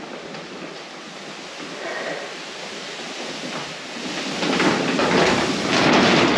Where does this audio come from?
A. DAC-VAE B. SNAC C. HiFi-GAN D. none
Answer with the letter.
D